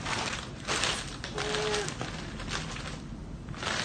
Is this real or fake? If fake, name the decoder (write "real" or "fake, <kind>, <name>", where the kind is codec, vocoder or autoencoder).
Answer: real